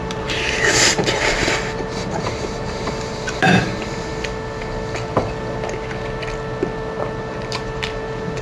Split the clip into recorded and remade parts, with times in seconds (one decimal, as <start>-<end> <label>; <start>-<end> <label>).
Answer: 0.0-4.1 remade; 4.1-7.2 recorded; 7.2-8.4 remade

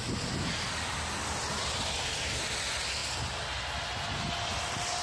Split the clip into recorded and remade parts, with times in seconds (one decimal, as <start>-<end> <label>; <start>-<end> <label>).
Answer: 0.0-5.0 recorded

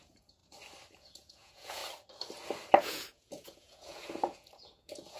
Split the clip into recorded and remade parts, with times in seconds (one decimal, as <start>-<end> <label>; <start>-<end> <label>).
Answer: 0.0-0.4 remade; 0.4-0.9 recorded; 0.9-1.8 remade; 1.8-2.8 recorded; 2.8-5.2 remade

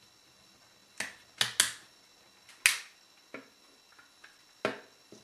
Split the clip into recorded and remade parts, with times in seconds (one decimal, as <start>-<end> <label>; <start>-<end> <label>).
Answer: 0.0-5.2 recorded

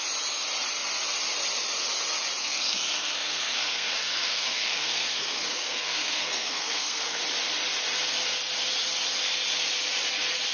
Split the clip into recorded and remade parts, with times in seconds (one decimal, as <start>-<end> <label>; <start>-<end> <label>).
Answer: 0.0-2.4 recorded; 2.4-7.2 remade; 7.2-10.5 recorded

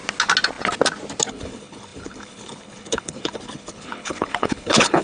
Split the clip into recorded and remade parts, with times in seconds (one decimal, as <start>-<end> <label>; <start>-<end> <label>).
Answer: 0.0-1.3 recorded; 1.3-5.0 remade